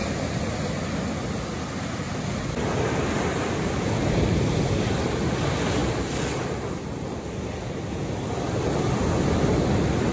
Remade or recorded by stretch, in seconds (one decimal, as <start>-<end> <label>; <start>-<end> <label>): 0.0-10.1 recorded